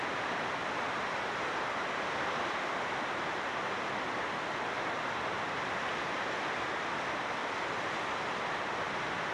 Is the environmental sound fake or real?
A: real